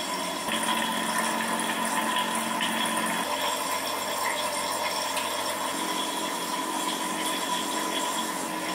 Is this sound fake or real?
real